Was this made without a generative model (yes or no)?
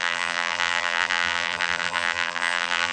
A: no